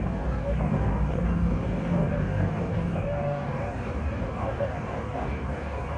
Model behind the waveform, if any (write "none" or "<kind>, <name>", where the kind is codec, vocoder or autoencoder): codec, DAC